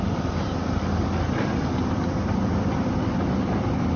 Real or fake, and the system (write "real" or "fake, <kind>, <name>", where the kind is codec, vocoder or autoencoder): fake, vocoder, BigVGAN v2